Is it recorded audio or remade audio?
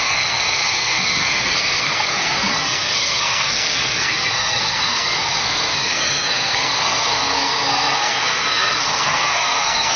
remade